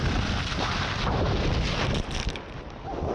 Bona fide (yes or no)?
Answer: yes